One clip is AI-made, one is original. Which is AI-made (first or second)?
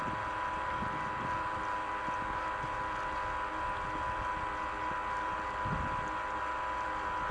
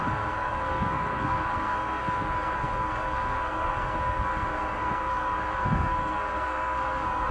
second